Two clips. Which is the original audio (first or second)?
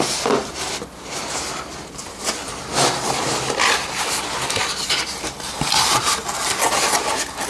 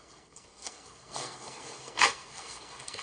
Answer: first